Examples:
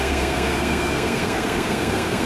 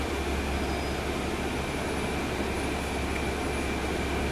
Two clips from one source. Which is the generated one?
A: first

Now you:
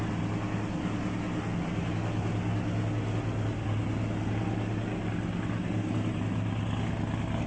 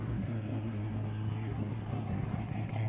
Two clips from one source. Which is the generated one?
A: second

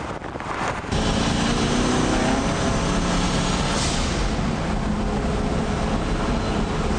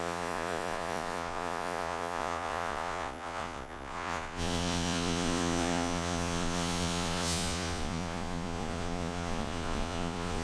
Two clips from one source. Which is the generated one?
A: second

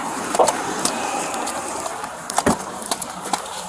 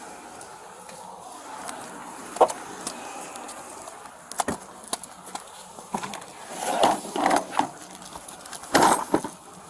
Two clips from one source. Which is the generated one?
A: first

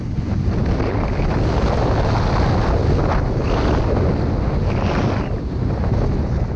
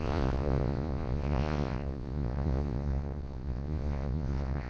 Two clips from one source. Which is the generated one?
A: second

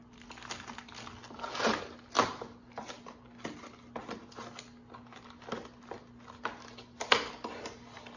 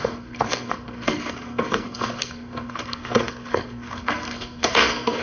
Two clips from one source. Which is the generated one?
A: second